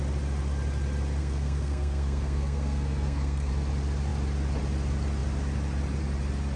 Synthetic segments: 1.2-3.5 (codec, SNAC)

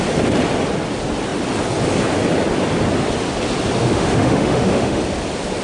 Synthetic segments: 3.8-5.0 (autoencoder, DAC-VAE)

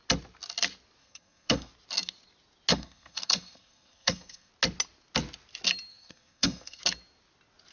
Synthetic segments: 1.0-1.7 (codec, SNAC); 2.7-4.5; 5.9-6.8

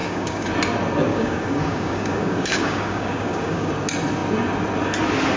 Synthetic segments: 0.0-0.5 (codec, DAC); 1.1-3.7